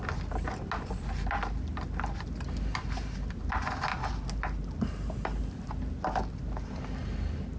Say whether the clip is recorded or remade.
recorded